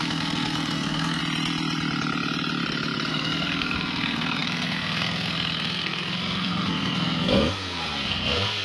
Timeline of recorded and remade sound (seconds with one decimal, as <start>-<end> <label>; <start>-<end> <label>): 0.0-1.2 remade; 1.2-3.1 recorded; 3.1-8.6 remade